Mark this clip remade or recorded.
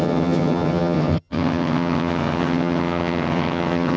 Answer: remade